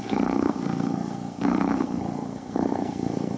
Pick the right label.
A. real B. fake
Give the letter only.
B